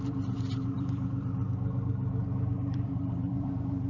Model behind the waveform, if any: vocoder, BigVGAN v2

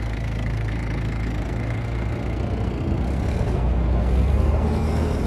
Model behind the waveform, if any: codec, SNAC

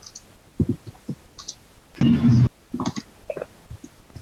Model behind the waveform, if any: none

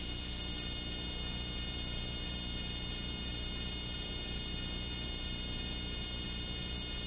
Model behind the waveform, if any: none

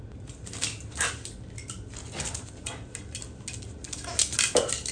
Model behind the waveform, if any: none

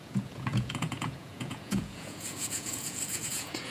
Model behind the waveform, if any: vocoder, Vocos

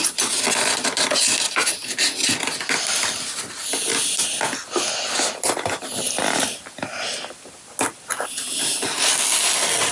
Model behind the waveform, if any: none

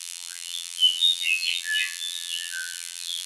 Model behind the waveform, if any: vocoder, BigVGAN v2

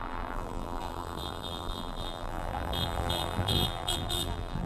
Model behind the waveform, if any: vocoder, BigVGAN v2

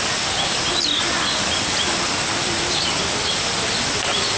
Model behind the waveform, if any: none